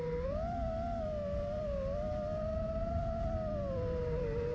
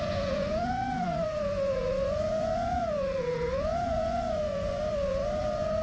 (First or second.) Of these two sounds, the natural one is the first